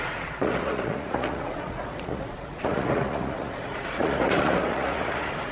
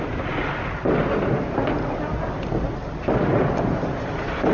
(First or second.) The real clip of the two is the second